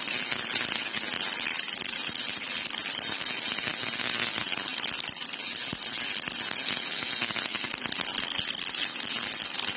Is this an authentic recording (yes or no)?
yes